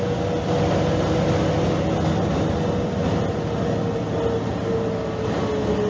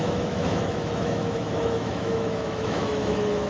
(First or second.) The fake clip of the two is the second